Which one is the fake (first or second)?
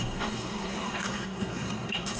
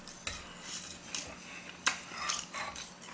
first